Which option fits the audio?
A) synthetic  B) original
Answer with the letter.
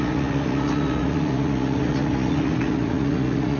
A